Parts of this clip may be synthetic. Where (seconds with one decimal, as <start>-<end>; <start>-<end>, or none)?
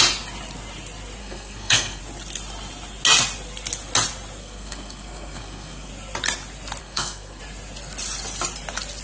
1.2-2.0; 4.4-5.9; 6.8-7.4